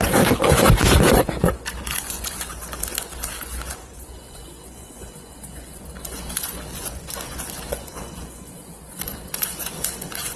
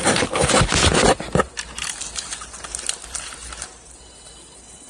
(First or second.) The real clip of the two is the second